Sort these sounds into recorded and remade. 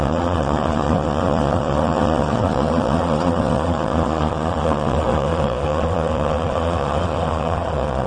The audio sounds remade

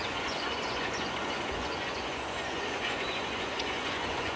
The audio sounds remade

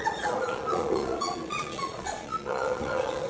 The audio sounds remade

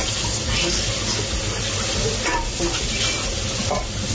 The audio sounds recorded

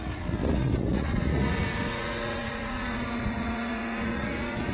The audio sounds remade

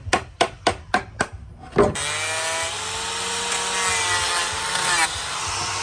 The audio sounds recorded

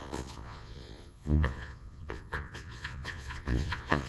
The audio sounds remade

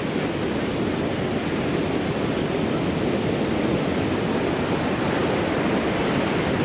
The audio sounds recorded